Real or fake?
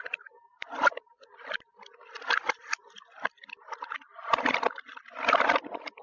real